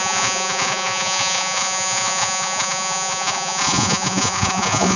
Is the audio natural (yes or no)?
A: no